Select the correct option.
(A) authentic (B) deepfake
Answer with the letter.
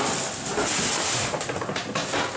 A